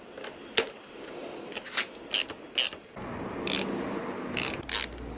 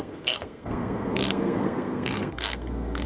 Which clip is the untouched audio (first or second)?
first